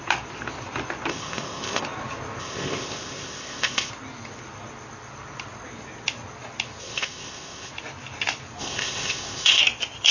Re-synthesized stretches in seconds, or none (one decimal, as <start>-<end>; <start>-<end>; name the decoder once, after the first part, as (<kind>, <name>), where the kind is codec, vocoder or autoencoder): 1.1-1.8 (codec, ZipCodec); 2.4-3.9; 6.8-7.7; 8.6-9.6